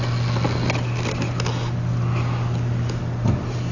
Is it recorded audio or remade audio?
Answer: recorded